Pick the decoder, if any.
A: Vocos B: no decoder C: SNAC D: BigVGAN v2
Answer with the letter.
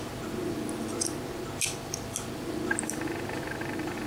B